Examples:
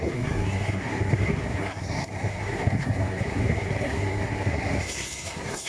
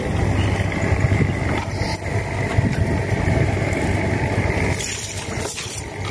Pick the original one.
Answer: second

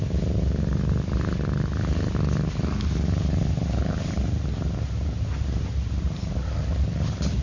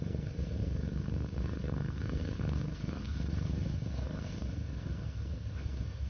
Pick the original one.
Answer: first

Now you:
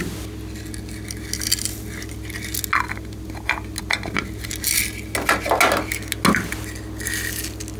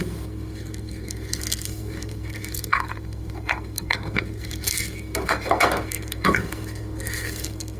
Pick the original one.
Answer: first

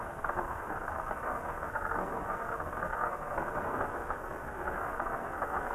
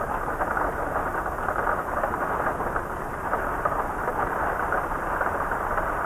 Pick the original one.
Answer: second